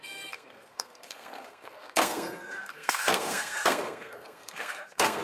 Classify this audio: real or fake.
fake